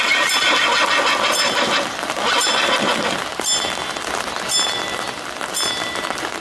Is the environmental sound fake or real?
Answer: real